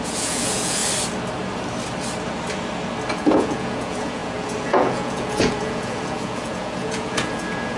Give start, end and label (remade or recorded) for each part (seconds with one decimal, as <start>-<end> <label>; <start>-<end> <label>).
0.0-0.8 remade; 0.8-3.1 recorded; 3.1-7.8 remade